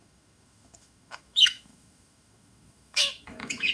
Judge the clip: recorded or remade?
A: remade